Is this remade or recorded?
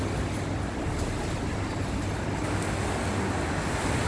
recorded